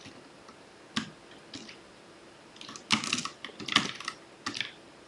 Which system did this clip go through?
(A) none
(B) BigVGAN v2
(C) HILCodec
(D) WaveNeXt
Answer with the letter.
A